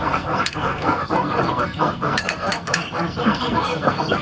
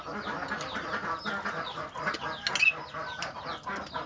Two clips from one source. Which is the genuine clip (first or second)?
second